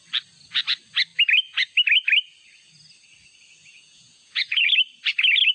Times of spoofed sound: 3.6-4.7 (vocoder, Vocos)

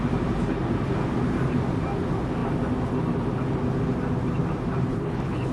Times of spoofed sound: 4.9-5.5 (codec, HILCodec)

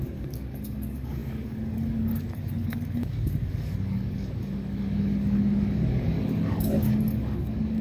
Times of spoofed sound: 0.0-7.8 (codec, DAC)

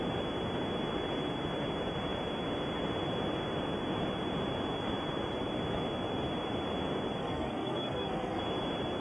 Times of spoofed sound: 7.2-8.4 (codec, SNAC)

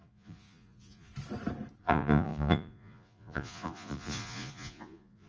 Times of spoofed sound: 0.0-1.1 (vocoder, Vocos); 1.8-5.3

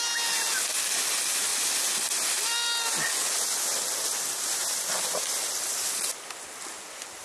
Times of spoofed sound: none